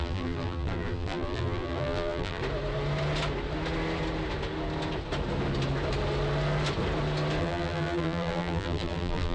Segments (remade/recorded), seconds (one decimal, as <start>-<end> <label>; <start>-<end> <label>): 0.0-2.4 remade; 2.4-7.4 recorded; 7.4-9.3 remade